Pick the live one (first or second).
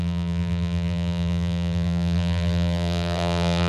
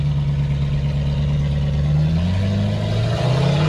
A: second